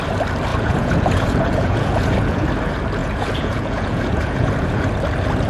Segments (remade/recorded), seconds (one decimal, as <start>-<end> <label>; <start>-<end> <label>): 0.0-0.5 recorded; 0.5-2.5 remade; 2.5-3.0 recorded; 3.0-4.9 remade; 4.9-5.5 recorded